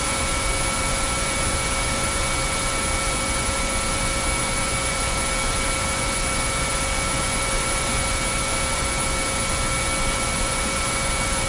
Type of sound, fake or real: fake